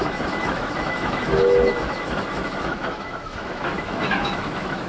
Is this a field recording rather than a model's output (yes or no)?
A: no